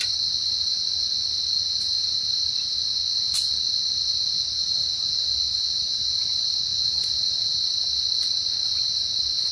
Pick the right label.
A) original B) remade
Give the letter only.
A